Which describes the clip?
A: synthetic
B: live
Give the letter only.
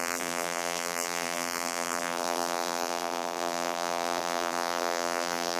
A